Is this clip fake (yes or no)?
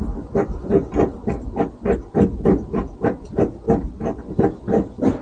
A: no